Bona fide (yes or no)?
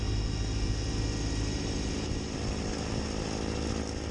yes